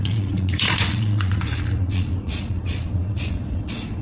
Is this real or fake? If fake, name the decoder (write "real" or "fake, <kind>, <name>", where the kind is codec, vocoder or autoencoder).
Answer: fake, vocoder, Vocos